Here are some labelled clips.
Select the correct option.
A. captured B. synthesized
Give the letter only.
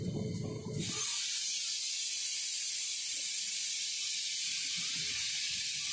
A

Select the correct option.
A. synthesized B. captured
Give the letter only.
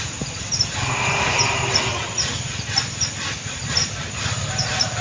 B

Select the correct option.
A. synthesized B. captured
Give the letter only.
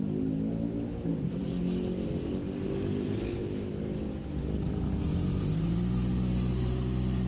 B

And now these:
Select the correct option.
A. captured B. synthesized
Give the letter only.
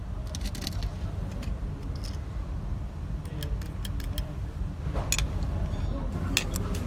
A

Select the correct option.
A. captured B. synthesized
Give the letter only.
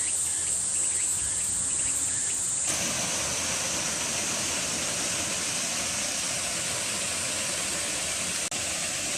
A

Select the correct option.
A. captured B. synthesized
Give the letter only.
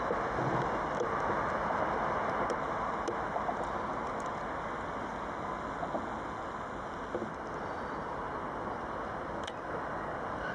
A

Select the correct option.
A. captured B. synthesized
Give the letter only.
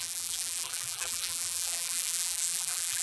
B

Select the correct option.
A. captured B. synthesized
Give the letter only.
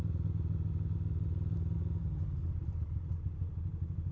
A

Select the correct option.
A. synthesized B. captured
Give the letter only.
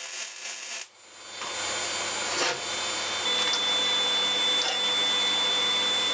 B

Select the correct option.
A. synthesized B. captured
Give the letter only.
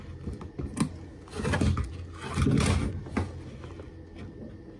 B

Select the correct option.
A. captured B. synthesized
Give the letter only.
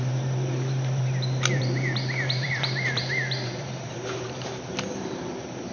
B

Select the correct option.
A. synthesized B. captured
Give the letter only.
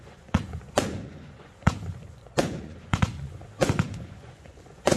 A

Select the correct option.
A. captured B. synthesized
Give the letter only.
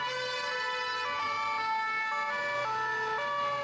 A